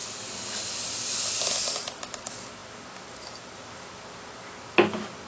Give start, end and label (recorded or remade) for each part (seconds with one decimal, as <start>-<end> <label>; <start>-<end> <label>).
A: 0.0-5.3 recorded